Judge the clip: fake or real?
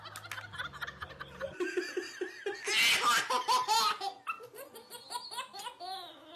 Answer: real